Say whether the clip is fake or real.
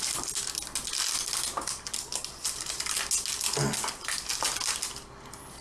real